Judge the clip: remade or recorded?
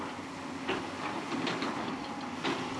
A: recorded